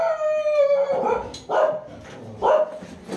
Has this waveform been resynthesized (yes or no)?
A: no